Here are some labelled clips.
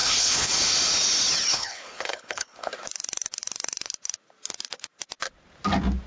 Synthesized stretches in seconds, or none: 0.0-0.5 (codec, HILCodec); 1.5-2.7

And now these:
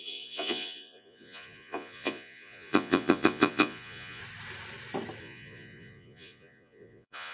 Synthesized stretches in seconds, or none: 0.0-4.2 (vocoder, Vocos); 5.2-7.3